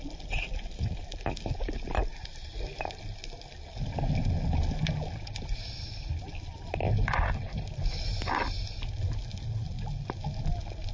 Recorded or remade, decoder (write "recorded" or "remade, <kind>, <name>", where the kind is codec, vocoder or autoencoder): recorded